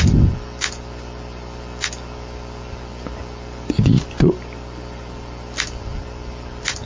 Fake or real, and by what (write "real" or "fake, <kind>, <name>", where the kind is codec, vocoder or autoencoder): real